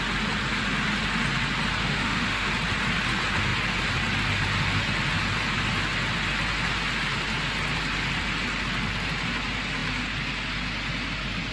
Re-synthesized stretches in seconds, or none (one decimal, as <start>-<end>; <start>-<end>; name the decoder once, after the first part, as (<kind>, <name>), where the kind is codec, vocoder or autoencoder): 1.8-2.5 (autoencoder, DAC-VAE)